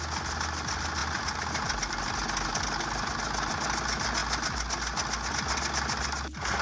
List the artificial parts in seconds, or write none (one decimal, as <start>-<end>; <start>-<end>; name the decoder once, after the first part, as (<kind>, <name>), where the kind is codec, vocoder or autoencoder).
none